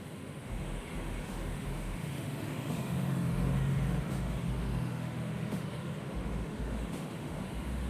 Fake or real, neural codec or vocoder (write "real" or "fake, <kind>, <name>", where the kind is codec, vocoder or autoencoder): fake, autoencoder, DAC-VAE